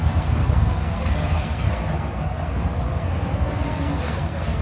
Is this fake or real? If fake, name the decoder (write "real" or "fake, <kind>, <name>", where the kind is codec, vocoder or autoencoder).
fake, codec, SNAC